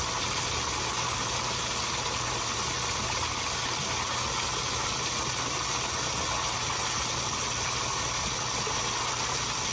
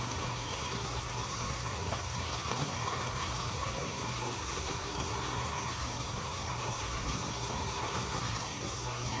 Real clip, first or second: first